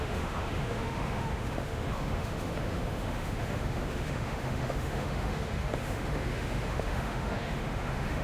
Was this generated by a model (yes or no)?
yes